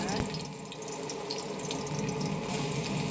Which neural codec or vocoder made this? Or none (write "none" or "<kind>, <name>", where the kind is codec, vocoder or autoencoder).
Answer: none